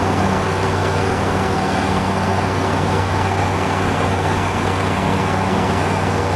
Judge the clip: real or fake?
fake